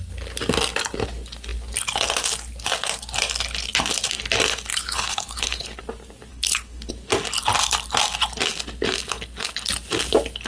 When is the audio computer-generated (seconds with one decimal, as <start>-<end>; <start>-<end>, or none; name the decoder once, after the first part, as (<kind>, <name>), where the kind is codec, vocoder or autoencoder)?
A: 4.7-5.8 (codec, HILCodec); 6.3-6.9